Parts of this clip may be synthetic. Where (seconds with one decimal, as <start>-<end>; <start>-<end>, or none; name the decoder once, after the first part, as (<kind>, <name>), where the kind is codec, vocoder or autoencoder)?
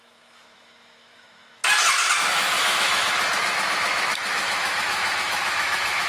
0.0-1.6 (autoencoder, DAC-VAE); 2.3-6.1